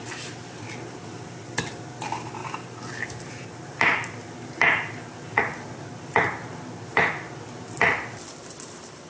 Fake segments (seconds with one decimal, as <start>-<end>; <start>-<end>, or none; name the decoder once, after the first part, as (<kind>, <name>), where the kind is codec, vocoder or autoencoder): 0.0-2.4 (vocoder, BigVGAN v2); 5.4-9.1